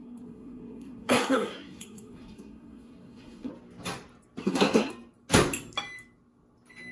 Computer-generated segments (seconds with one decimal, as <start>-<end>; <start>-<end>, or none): 0.0-3.5; 4.4-4.9